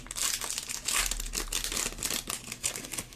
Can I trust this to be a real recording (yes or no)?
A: yes